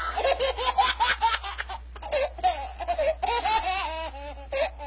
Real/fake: real